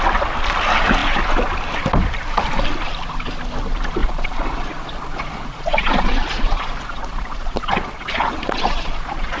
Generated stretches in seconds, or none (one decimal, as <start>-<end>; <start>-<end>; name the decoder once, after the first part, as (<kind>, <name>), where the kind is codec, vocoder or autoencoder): 4.0-9.4 (vocoder, Vocos)